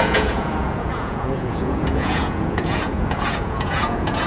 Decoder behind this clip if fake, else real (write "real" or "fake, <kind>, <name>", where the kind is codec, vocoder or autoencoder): fake, vocoder, Vocos